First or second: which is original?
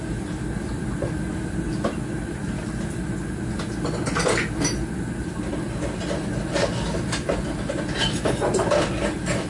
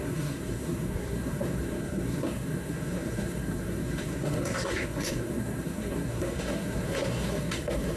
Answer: first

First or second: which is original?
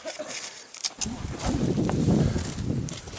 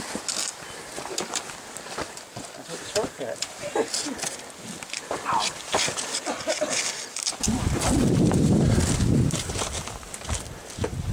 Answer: second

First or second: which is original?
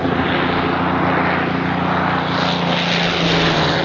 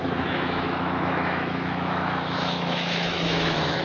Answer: first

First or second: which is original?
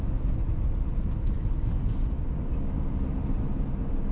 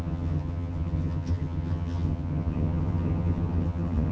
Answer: first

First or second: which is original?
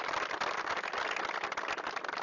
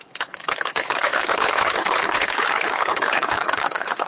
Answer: first